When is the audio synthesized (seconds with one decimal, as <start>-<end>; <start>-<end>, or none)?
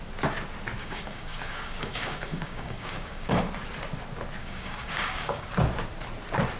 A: 0.8-3.4; 4.4-5.5